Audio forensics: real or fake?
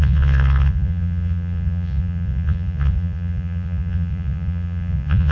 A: fake